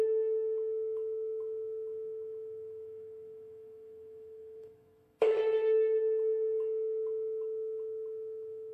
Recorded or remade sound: remade